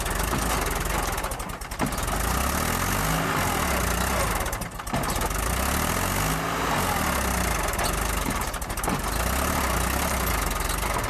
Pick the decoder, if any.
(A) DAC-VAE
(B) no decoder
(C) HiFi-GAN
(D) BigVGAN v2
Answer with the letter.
B